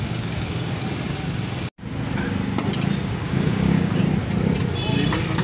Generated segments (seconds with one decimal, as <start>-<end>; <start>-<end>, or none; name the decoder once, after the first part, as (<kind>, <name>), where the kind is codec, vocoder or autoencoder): 0.0-0.8 (codec, DAC); 3.1-4.0